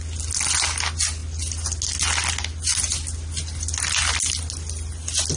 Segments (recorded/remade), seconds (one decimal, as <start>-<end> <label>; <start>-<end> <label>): 0.0-5.4 recorded